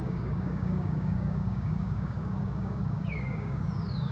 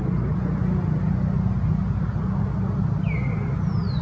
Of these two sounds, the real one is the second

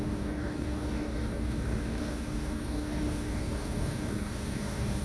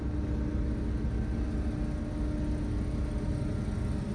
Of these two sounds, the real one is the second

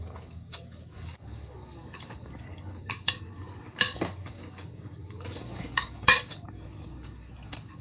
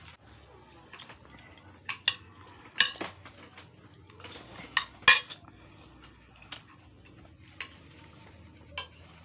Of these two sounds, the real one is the second